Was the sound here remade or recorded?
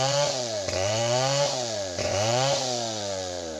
remade